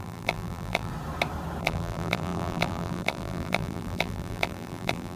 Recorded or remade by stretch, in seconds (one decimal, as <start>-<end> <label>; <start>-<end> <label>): 0.0-0.9 remade; 0.9-1.6 recorded; 1.6-5.2 remade